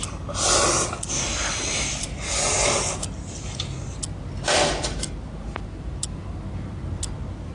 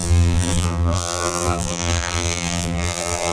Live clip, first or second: first